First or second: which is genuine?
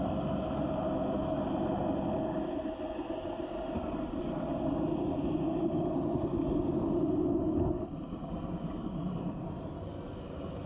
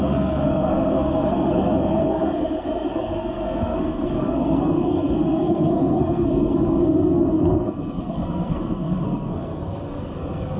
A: first